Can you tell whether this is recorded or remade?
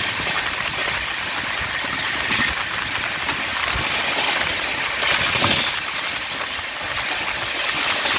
recorded